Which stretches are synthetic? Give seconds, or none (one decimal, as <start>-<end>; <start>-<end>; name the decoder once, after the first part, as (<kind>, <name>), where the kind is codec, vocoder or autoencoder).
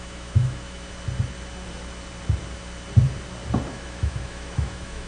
0.0-0.9 (autoencoder, DAC-VAE); 3.7-5.1